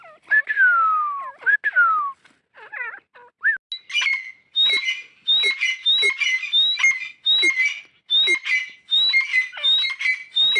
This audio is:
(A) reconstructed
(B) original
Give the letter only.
B